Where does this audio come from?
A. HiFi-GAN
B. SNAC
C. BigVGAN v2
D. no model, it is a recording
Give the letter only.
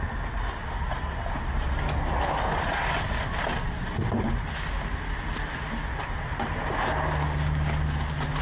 D